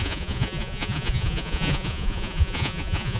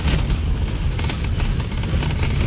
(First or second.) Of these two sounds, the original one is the second